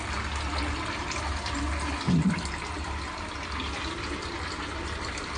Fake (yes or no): no